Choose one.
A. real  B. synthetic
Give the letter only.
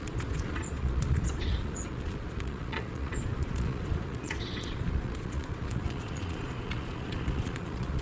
B